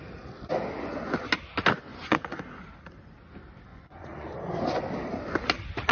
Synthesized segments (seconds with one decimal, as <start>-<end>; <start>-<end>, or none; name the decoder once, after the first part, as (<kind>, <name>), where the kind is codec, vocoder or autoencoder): 1.9-2.5 (vocoder, Vocos); 3.7-4.6